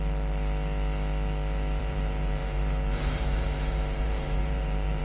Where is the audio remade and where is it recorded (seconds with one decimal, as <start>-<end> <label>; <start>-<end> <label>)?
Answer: 0.0-1.8 recorded; 1.8-5.0 remade